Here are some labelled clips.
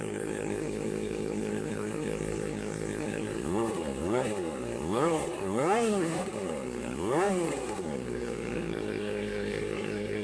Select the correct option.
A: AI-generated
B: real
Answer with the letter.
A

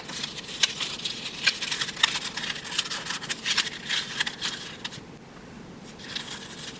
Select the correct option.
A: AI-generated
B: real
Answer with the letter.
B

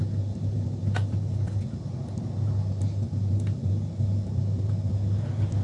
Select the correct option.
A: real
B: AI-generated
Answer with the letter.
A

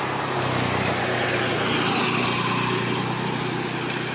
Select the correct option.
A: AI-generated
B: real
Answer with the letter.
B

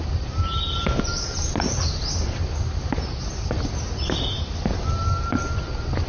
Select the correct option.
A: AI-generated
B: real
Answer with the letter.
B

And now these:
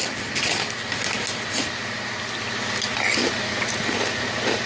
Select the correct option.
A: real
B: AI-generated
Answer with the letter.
A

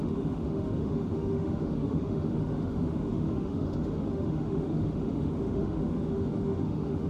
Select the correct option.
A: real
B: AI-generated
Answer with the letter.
B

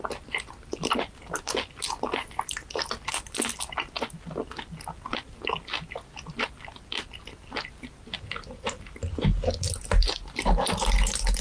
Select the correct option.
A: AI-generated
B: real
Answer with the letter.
B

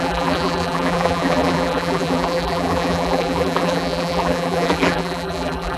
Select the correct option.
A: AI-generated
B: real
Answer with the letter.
A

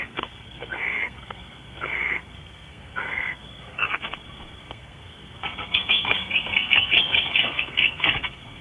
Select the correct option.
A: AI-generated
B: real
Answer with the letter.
A